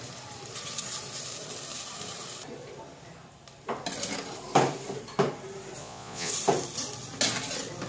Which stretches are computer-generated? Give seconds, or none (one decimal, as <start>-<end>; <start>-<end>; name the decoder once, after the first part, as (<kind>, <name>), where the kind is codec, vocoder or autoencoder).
5.8-6.3 (vocoder, Vocos)